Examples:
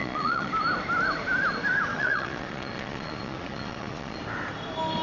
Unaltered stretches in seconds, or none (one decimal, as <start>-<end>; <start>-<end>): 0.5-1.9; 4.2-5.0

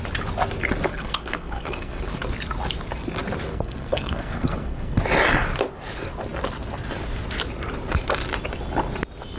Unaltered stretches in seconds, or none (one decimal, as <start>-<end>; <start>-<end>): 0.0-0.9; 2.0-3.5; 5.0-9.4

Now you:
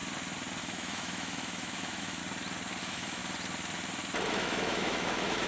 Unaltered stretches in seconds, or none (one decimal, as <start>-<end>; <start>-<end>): 0.0-0.6; 2.2-2.8; 3.2-4.3